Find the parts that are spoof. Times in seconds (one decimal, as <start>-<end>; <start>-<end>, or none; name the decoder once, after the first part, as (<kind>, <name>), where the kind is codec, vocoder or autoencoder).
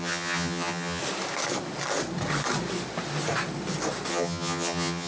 0.0-1.0 (vocoder, HiFi-GAN); 4.1-5.1